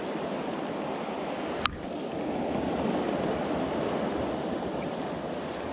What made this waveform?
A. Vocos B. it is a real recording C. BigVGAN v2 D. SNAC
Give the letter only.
B